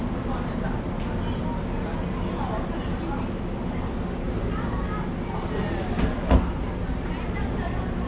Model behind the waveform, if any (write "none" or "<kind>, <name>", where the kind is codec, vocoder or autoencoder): none